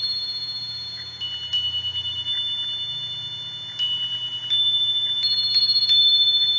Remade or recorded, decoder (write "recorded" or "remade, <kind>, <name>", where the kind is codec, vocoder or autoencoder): recorded